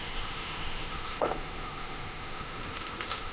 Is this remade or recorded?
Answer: remade